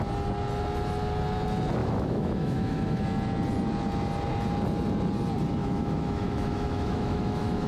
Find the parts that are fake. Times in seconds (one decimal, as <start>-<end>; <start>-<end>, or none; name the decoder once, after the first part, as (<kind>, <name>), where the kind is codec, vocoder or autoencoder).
1.8-3.0 (autoencoder, DAC-VAE); 5.6-7.7